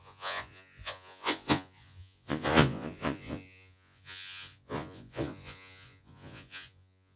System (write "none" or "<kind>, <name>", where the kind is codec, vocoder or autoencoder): vocoder, Vocos